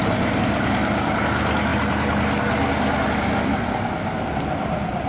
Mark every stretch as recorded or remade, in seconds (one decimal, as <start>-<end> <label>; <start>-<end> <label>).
0.0-5.1 recorded